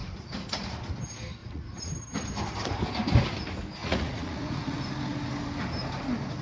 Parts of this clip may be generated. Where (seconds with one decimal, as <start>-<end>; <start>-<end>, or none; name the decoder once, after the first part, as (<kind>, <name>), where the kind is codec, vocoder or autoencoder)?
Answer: 0.0-0.7 (vocoder, Vocos); 1.4-1.9; 3.8-4.8